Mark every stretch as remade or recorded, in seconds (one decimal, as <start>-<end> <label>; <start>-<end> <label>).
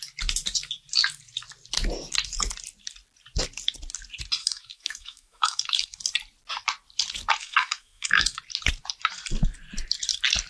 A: 0.0-4.4 recorded; 4.4-6.0 remade; 6.0-7.4 recorded; 7.4-8.4 remade; 8.4-10.5 recorded